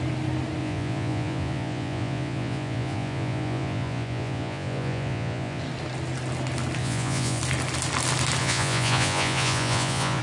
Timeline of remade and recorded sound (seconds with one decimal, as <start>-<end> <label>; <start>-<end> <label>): 0.0-0.6 recorded; 0.6-5.6 remade; 5.6-6.8 recorded; 6.8-7.4 remade; 7.4-8.4 recorded; 8.4-10.2 remade